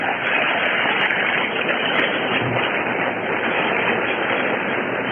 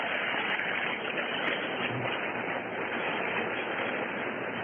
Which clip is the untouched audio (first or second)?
second